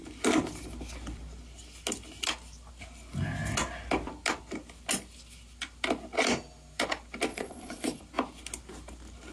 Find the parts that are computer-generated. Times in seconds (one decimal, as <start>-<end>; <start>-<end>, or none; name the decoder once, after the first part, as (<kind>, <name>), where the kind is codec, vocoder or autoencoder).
7.3-8.0 (vocoder, Vocos)

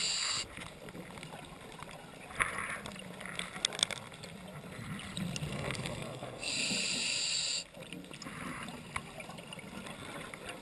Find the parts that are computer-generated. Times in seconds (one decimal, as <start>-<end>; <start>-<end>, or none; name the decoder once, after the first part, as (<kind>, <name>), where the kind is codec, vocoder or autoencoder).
5.5-6.5 (codec, SNAC)

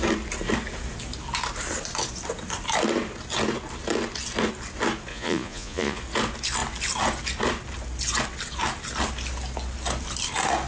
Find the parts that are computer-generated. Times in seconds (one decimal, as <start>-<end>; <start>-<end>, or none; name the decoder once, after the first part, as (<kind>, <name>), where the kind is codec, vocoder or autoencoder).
5.1-6.0 (vocoder, Vocos)